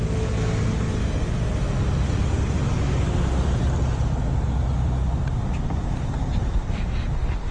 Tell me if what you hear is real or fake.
real